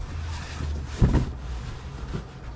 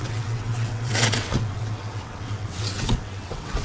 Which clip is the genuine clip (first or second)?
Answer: first